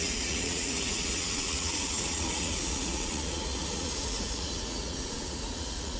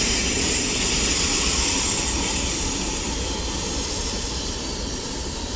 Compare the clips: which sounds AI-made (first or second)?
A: first